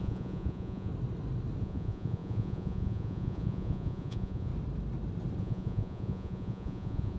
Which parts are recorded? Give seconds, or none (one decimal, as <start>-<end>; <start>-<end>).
0.9-1.6; 4.5-5.4